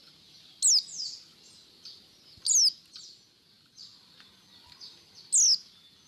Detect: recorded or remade recorded